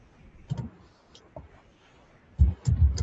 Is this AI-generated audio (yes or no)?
no